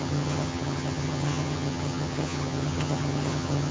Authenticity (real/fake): fake